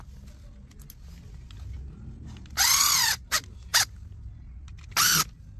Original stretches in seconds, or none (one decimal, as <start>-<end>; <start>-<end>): 0.0-5.6